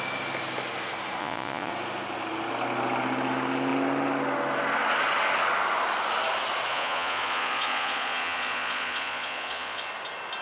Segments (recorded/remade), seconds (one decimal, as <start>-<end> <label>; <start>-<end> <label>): 0.0-1.2 recorded; 1.2-1.7 remade; 1.7-6.7 recorded; 6.7-9.9 remade; 9.9-10.4 recorded